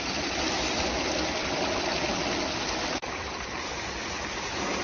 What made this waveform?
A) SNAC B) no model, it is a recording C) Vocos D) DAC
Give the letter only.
B